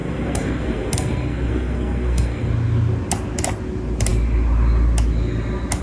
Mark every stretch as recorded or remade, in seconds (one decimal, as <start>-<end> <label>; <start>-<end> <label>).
0.0-2.5 remade; 2.5-5.8 recorded